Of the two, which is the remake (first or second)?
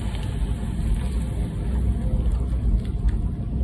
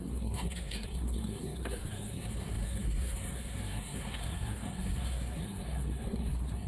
second